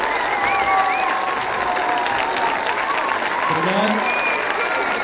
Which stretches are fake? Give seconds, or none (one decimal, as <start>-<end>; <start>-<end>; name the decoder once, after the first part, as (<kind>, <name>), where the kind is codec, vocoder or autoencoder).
none